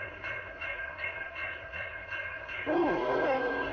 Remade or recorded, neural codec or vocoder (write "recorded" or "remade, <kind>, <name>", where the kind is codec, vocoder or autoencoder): remade, codec, SNAC